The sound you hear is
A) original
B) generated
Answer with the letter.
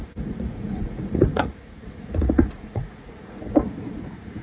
B